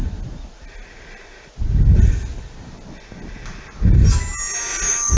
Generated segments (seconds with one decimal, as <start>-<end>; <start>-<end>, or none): 0.0-1.2